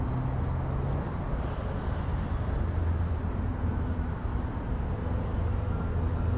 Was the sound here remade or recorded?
recorded